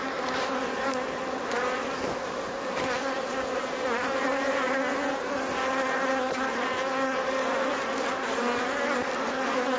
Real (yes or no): yes